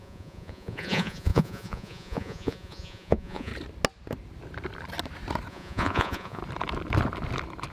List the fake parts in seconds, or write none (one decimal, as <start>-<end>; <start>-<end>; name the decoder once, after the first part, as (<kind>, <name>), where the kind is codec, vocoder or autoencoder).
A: 0.0-3.5 (vocoder, Vocos); 5.5-6.4